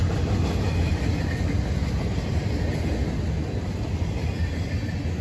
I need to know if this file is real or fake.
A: real